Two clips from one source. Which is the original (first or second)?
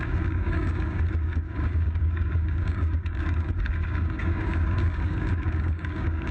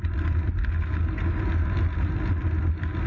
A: second